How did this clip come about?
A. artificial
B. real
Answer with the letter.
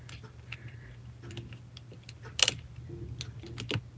B